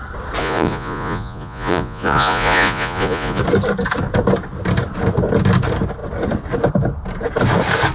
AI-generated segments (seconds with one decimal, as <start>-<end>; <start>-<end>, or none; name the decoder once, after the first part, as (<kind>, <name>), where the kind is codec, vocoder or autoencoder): 0.4-3.4 (vocoder, Vocos)